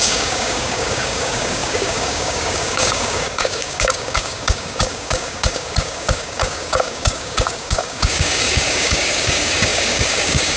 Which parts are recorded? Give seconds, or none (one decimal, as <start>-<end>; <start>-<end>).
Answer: none